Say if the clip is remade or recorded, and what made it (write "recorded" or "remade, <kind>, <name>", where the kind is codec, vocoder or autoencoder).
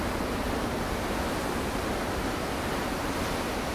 recorded